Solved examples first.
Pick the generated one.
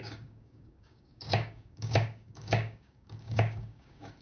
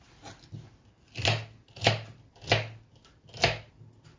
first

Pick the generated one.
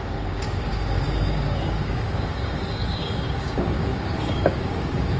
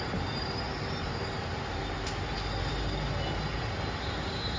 first